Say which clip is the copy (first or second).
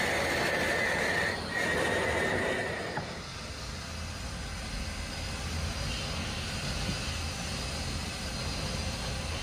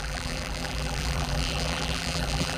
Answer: second